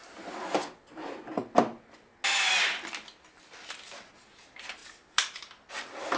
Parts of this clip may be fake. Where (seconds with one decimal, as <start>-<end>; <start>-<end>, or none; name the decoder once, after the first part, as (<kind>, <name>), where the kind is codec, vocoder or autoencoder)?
none